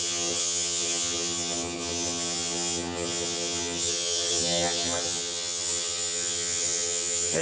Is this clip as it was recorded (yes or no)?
no